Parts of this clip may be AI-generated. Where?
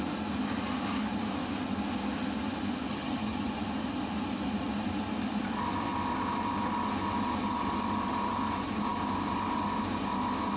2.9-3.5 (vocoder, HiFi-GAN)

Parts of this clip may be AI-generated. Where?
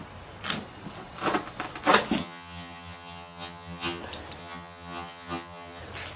2.2-4.0 (vocoder, HiFi-GAN); 4.4-5.8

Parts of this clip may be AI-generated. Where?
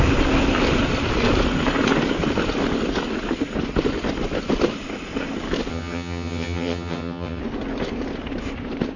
5.7-7.4 (vocoder, HiFi-GAN)